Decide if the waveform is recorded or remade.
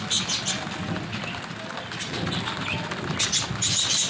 recorded